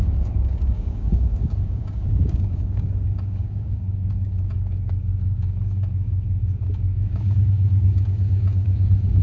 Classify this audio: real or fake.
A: fake